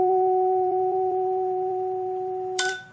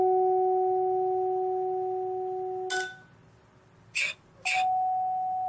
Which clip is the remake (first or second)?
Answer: first